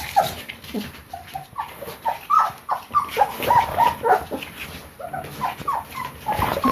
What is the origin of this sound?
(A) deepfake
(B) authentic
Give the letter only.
B